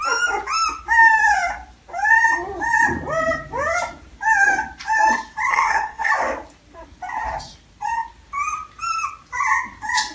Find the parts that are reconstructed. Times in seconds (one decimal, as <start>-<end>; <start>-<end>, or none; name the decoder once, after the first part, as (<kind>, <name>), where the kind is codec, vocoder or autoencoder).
5.5-6.1 (codec, SNAC)